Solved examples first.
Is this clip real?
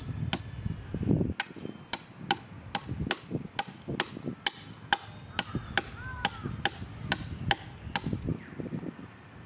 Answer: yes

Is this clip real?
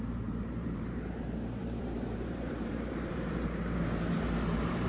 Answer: no